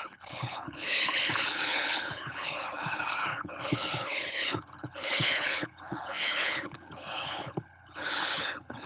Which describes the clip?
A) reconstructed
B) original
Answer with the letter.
A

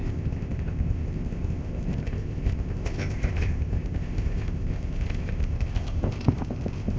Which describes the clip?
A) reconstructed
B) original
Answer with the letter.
A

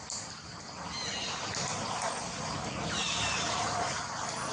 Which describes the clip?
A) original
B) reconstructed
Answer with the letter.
A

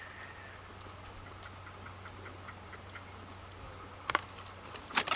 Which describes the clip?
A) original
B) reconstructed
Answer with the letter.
A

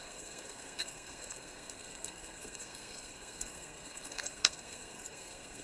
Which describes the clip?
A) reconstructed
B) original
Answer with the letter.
A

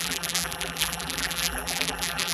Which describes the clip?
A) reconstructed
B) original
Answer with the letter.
A